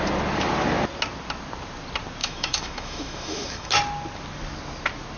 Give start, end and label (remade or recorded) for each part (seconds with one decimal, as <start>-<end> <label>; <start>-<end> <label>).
0.0-2.2 recorded; 2.2-3.7 remade; 3.7-5.2 recorded